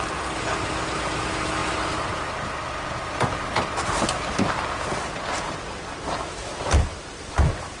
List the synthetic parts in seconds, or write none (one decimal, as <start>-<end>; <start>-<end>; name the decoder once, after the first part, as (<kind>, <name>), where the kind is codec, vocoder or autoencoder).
none